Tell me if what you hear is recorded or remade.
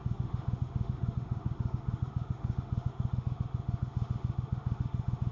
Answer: remade